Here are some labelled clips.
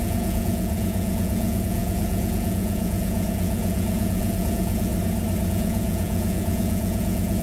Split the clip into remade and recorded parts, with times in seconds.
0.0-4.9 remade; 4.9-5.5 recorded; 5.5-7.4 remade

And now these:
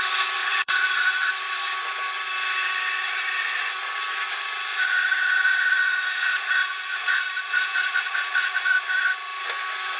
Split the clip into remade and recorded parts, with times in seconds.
0.0-0.4 recorded; 0.4-1.3 remade; 1.3-4.7 recorded; 4.7-8.8 remade; 8.8-10.0 recorded

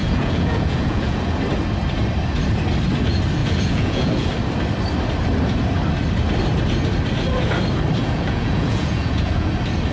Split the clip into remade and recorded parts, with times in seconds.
0.0-1.4 remade; 1.4-3.4 recorded; 3.4-4.3 remade; 4.3-8.0 recorded; 8.0-9.5 remade; 9.5-9.9 recorded